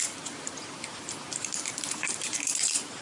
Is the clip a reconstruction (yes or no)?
yes